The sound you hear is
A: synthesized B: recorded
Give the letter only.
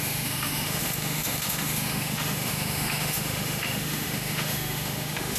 A